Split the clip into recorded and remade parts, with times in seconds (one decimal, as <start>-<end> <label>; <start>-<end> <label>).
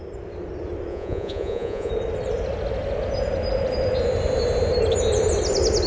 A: 0.0-0.9 recorded; 0.9-1.9 remade; 1.9-5.9 recorded